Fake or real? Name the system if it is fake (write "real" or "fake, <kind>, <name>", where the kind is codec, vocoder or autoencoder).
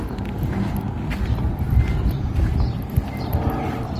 real